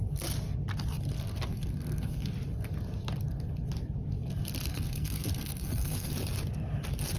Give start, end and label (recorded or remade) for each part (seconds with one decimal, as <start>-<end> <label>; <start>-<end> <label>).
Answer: 0.0-1.5 recorded; 1.5-2.3 remade; 2.3-4.7 recorded; 4.7-6.1 remade; 6.1-7.2 recorded